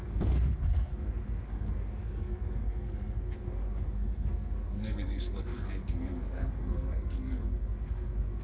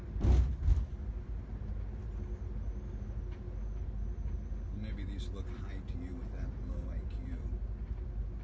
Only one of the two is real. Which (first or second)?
second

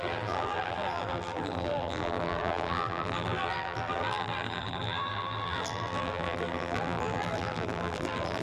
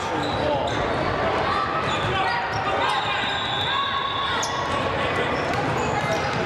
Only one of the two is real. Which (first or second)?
second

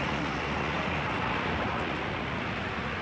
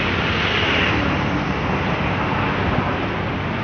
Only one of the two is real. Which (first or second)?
second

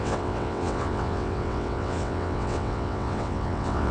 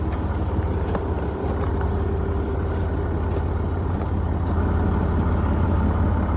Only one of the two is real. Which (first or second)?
second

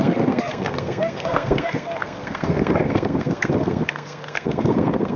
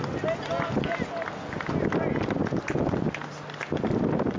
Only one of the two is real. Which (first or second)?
second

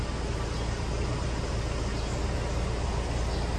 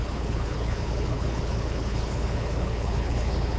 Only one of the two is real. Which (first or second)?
first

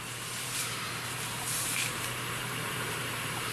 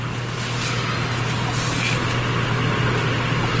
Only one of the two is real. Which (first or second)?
second